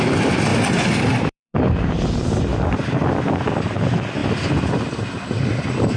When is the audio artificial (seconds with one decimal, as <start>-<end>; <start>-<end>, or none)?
0.5-1.7; 2.5-3.3; 4.2-4.7